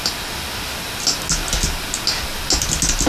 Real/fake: real